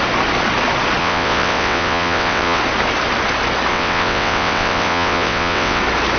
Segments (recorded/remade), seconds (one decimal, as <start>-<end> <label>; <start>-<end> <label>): 0.0-1.0 recorded; 1.0-2.6 remade; 2.6-3.7 recorded; 3.7-5.8 remade; 5.8-6.2 recorded

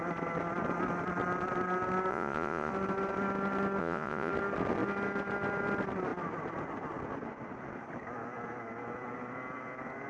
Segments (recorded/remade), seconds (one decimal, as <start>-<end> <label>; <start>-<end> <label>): 0.0-2.1 recorded; 2.1-2.7 remade; 2.7-3.8 recorded; 3.8-4.3 remade; 4.3-10.1 recorded

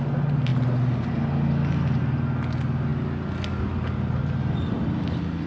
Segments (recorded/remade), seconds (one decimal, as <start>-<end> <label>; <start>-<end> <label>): 0.0-5.5 recorded

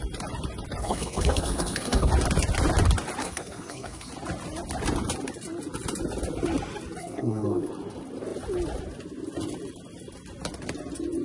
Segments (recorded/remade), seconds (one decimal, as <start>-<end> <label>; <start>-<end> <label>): 0.0-0.8 recorded; 0.8-2.1 remade; 2.1-3.2 recorded; 3.2-4.1 remade; 4.1-7.0 recorded; 7.0-7.7 remade; 7.7-11.2 recorded

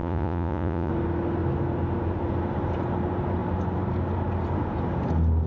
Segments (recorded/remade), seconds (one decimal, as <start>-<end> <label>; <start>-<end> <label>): 0.0-0.9 remade; 0.9-5.5 recorded